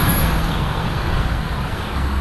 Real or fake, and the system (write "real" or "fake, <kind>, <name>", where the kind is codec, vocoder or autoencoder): fake, codec, SNAC